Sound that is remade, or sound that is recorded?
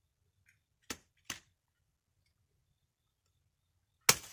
recorded